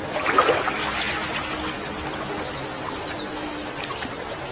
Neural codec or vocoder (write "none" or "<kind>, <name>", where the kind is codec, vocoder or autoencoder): none